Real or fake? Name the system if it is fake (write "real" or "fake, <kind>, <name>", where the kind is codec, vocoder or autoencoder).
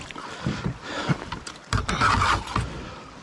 real